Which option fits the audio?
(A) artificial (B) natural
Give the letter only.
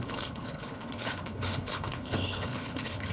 A